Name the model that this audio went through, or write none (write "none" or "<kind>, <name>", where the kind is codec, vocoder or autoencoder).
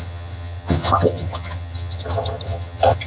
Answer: vocoder, HiFi-GAN